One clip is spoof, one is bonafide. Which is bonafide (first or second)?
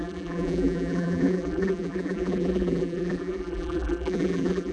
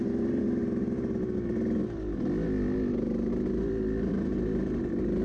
second